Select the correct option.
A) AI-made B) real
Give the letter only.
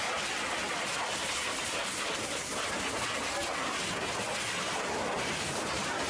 B